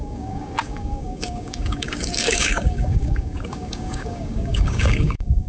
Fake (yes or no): yes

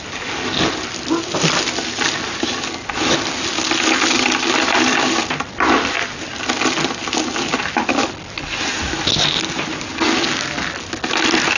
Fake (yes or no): no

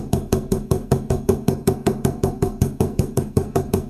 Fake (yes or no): yes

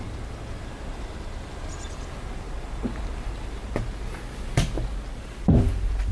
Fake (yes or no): no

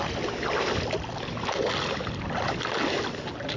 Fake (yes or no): no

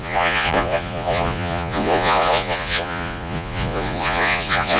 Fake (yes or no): yes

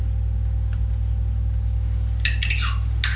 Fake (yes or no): no